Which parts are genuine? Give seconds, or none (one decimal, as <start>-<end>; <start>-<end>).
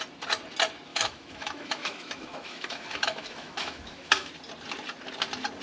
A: 0.0-0.9; 4.3-5.6